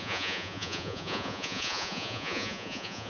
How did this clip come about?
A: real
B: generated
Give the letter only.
B